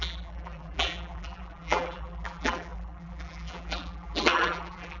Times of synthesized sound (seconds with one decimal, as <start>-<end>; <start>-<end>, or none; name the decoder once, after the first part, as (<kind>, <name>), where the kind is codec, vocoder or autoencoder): 0.0-5.0 (vocoder, BigVGAN v2)